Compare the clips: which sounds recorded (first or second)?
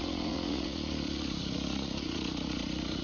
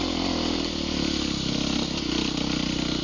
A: second